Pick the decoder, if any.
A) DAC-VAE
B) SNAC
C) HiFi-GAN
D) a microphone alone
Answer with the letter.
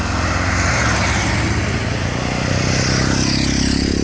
D